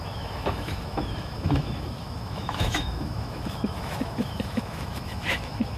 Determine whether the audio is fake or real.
fake